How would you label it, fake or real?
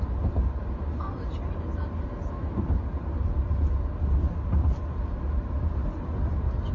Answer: real